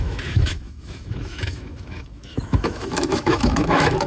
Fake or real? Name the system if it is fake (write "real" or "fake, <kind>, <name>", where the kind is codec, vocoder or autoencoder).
fake, autoencoder, DAC-VAE